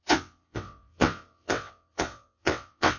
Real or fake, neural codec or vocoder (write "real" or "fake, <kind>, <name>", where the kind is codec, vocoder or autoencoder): fake, vocoder, WaveNeXt